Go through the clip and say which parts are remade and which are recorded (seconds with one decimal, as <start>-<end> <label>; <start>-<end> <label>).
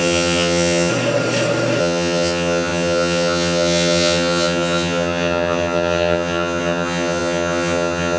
0.0-0.9 remade; 0.9-1.8 recorded; 1.8-8.2 remade